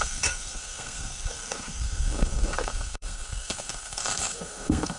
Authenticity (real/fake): fake